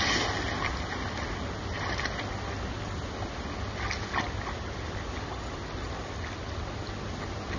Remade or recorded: recorded